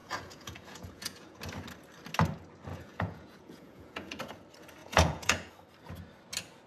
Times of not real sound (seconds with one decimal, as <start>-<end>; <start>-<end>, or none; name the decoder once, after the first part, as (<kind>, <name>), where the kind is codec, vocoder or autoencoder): 0.0-1.4 (vocoder, Vocos); 2.7-4.2; 4.8-5.5